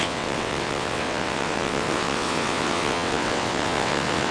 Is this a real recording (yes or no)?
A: no